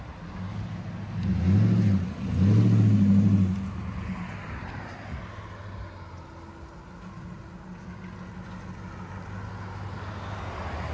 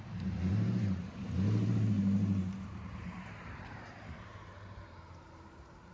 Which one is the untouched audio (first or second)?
first